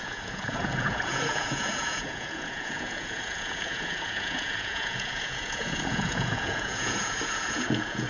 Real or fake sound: fake